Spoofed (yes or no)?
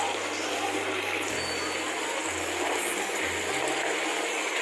no